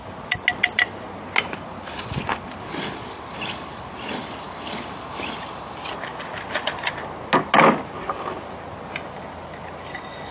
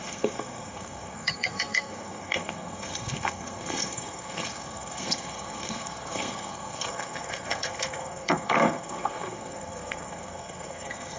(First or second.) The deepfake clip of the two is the second